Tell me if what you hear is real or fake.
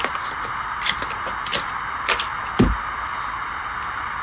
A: real